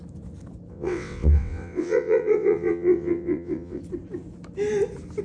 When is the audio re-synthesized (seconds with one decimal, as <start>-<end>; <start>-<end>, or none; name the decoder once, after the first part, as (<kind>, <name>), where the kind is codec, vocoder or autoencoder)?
0.7-3.8 (vocoder, WaveNeXt)